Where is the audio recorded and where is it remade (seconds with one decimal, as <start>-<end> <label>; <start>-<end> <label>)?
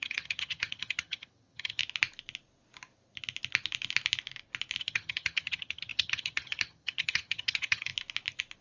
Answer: 0.0-1.8 remade; 1.8-4.8 recorded; 4.8-7.9 remade; 7.9-8.6 recorded